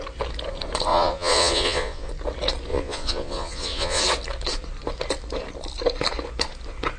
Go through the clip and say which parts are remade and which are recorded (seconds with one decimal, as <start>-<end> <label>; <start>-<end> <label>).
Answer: 0.0-0.9 recorded; 0.9-2.1 remade; 2.1-2.7 recorded; 2.7-4.0 remade; 4.0-7.0 recorded